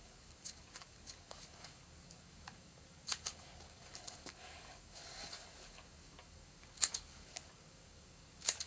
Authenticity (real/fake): fake